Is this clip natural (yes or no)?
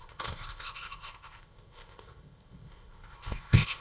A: no